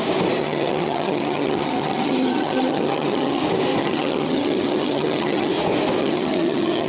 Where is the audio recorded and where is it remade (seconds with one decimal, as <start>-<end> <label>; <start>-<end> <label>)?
0.0-0.4 recorded; 0.4-3.4 remade; 3.4-3.8 recorded; 3.8-5.5 remade; 5.5-6.0 recorded; 6.0-6.9 remade